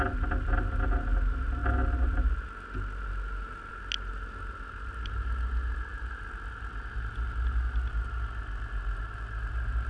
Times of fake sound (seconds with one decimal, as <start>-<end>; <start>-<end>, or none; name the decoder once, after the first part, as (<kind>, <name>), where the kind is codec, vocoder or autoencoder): none